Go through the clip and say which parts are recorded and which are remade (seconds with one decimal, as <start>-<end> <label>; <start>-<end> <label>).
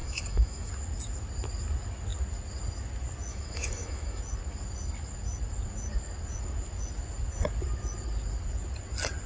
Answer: 0.0-0.7 remade; 0.7-3.3 recorded; 3.3-4.2 remade; 4.2-9.3 recorded